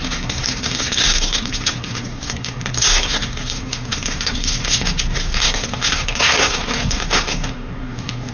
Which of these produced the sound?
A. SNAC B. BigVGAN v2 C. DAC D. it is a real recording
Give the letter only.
A